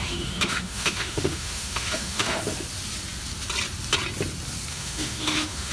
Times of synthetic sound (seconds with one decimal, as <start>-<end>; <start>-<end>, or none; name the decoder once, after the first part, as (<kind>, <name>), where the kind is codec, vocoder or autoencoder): 0.0-2.4 (autoencoder, DAC-VAE); 4.7-5.7